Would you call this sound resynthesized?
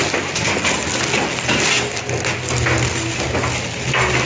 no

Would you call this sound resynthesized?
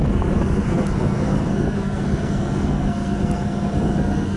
yes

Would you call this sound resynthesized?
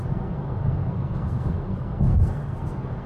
yes